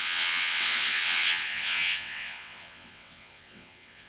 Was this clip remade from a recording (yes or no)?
yes